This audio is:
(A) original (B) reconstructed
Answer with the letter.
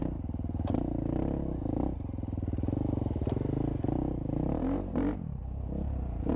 B